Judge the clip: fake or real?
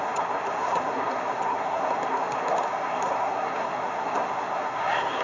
fake